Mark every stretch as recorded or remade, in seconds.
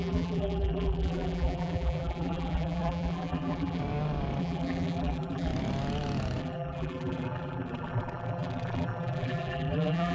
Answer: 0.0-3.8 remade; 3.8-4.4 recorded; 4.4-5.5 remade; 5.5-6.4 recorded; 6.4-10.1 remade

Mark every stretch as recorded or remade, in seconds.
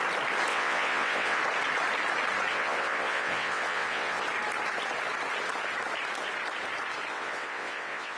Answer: 0.0-0.5 recorded; 0.5-1.4 remade; 1.4-2.5 recorded; 2.5-4.2 remade; 4.2-7.1 recorded; 7.1-8.2 remade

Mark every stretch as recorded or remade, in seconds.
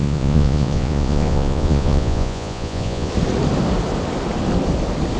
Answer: 0.0-3.1 remade; 3.1-5.2 recorded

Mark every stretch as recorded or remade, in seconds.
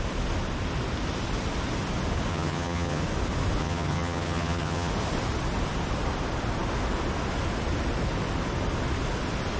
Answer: 0.0-2.3 recorded; 2.3-3.0 remade; 3.0-3.6 recorded; 3.6-4.9 remade; 4.9-9.6 recorded